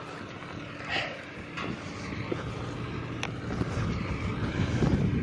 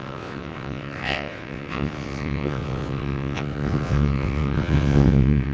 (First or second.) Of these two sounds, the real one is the first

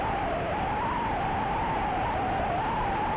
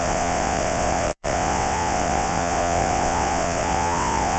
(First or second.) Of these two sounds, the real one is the first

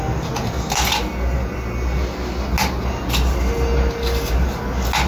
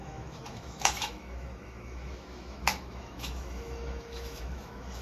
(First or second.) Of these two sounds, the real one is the first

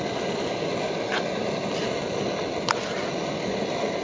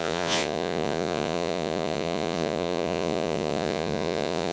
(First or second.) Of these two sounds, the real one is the first